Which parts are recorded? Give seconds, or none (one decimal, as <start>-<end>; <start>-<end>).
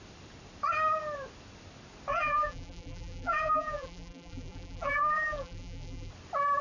0.0-2.1; 6.1-6.6